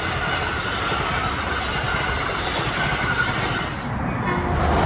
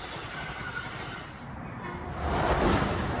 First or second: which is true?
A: first